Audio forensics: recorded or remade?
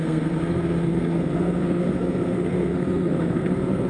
remade